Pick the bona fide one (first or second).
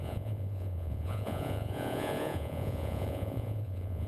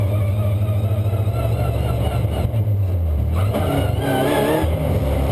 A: second